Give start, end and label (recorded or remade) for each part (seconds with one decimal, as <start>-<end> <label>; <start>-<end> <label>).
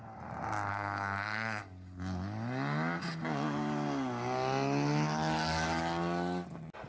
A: 0.0-0.7 recorded; 0.7-1.6 remade; 1.6-6.9 recorded